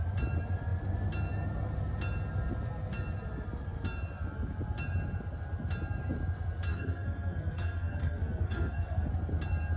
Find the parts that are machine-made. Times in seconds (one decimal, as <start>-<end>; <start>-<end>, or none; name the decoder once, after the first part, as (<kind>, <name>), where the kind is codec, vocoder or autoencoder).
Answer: 6.7-9.1 (codec, SNAC)